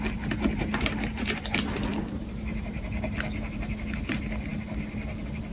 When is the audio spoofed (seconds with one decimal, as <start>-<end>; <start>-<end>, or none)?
0.7-1.4; 1.9-2.9